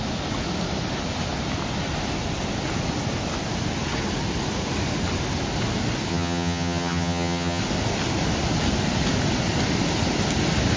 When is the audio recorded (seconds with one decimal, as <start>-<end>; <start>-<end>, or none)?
0.0-6.1; 7.6-10.8